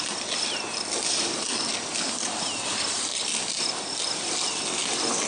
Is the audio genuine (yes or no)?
yes